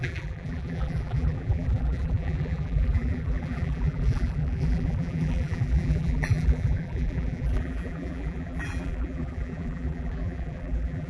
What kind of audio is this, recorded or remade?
remade